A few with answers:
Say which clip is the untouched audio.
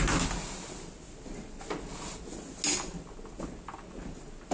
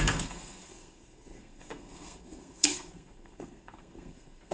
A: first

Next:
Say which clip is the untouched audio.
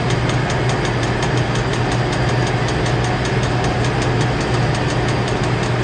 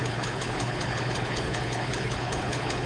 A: first